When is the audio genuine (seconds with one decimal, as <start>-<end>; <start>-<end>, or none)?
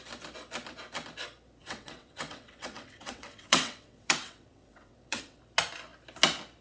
0.0-1.6; 5.4-6.6